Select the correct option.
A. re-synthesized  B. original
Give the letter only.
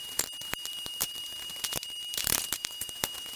A